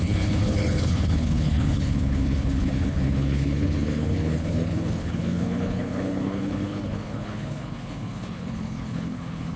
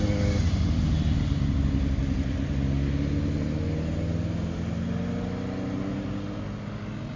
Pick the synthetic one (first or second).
first